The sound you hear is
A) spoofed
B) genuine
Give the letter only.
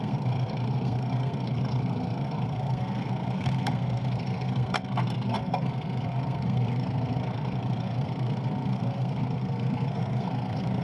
A